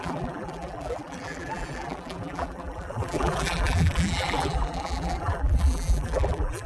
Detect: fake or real fake